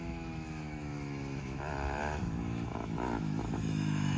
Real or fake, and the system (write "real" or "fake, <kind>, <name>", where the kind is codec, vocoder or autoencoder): fake, autoencoder, DAC-VAE